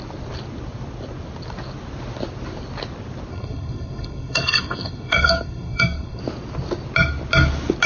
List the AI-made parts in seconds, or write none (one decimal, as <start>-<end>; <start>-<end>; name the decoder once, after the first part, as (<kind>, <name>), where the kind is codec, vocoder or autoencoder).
3.3-6.2 (codec, SNAC)